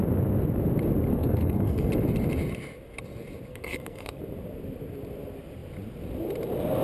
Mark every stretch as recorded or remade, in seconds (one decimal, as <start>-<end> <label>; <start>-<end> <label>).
0.0-1.1 recorded; 1.1-1.9 remade; 1.9-3.5 recorded; 3.5-4.2 remade; 4.2-6.8 recorded

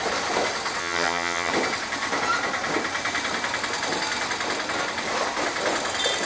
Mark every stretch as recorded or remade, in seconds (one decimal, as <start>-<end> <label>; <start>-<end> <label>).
0.0-0.8 recorded; 0.8-1.5 remade; 1.5-6.3 recorded